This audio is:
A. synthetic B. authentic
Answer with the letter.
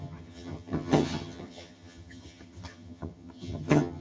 A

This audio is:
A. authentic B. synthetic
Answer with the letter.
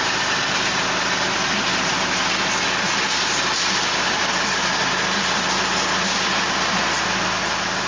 A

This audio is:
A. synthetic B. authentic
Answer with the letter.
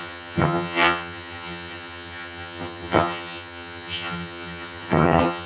A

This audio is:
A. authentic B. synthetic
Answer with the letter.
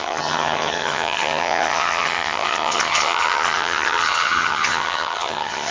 B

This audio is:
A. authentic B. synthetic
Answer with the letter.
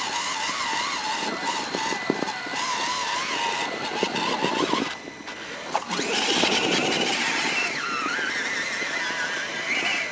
A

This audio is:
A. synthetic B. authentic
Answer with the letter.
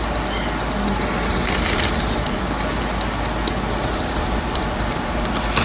B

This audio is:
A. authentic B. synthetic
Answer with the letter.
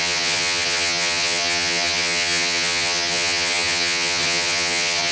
B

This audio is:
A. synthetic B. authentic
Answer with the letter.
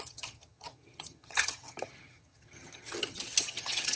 A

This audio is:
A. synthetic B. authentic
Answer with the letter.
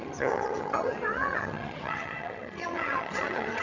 A